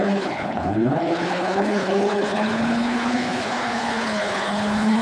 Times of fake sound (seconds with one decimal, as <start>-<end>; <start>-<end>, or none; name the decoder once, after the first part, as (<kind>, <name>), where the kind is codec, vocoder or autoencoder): 0.0-5.0 (codec, HILCodec)